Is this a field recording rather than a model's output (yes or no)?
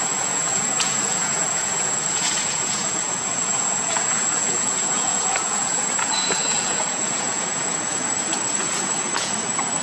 no